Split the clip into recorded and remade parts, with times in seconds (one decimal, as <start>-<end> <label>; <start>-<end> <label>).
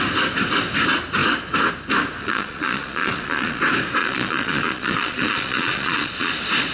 0.0-2.2 recorded; 2.2-3.6 remade; 3.6-4.0 recorded; 4.0-6.3 remade; 6.3-6.7 recorded